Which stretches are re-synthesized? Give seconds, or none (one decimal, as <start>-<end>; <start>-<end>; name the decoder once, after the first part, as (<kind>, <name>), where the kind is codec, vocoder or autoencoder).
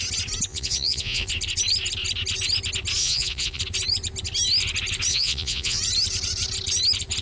0.5-1.3 (vocoder, Vocos); 3.0-3.6; 5.1-5.8